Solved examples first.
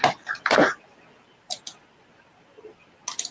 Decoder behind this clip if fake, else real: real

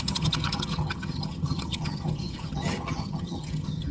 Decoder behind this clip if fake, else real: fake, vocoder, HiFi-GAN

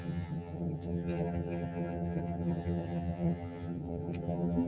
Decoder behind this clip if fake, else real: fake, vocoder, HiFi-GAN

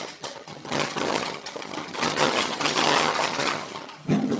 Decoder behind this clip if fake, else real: fake, vocoder, HiFi-GAN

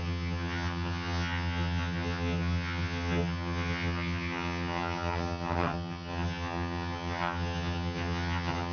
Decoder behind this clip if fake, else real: fake, vocoder, HiFi-GAN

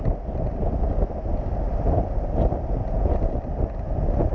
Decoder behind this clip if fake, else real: real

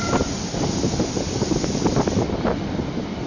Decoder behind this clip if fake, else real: real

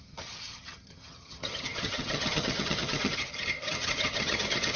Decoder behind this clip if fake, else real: fake, vocoder, HiFi-GAN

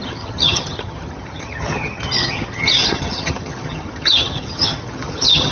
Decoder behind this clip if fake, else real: fake, vocoder, HiFi-GAN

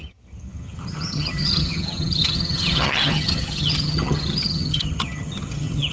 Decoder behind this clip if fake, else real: fake, vocoder, HiFi-GAN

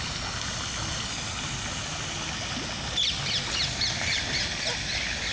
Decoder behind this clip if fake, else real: real